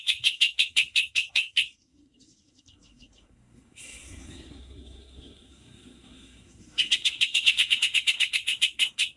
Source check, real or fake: fake